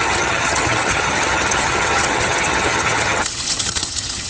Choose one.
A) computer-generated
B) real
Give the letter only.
A